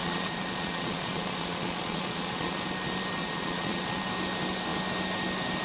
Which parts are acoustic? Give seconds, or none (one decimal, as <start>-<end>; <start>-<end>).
2.6-3.2; 4.0-5.6

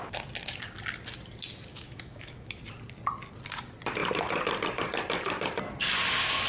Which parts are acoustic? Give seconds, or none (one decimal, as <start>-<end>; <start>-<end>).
0.0-1.7; 2.6-6.5

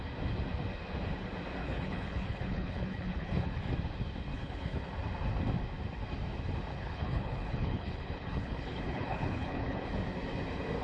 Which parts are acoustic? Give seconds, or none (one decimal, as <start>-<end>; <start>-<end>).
0.0-1.6; 3.6-4.3; 4.9-6.7; 9.9-10.8

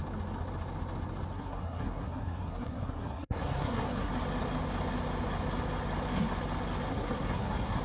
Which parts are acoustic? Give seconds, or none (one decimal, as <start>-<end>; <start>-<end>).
0.0-1.3; 4.1-6.9

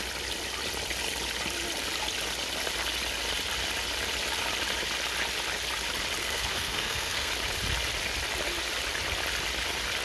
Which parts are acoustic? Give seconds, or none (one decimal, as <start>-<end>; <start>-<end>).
0.0-6.2; 7.3-10.0

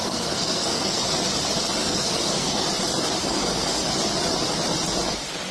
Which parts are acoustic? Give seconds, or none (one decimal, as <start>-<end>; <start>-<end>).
1.0-1.8; 2.7-3.2; 3.7-5.5

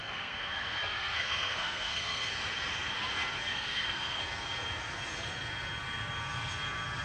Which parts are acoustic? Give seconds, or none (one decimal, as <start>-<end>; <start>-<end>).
2.3-3.5; 4.2-7.0

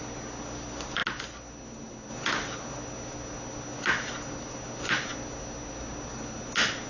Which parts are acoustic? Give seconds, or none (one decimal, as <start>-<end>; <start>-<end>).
0.0-6.9